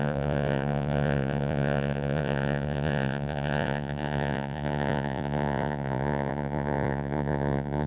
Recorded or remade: remade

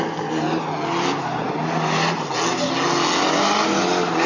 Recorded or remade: recorded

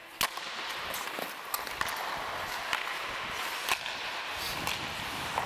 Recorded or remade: recorded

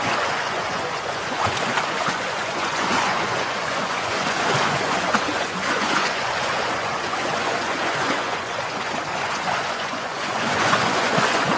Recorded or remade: remade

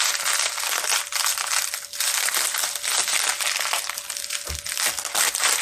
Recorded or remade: recorded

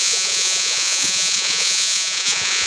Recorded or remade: remade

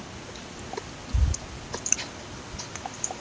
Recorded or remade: recorded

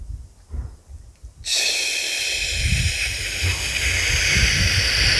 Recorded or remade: recorded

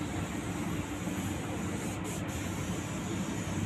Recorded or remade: recorded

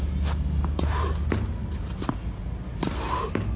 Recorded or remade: recorded